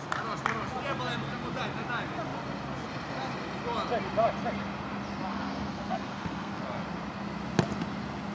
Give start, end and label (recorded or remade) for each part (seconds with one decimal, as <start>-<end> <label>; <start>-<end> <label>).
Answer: 0.0-5.3 recorded; 5.3-6.6 remade; 6.6-8.3 recorded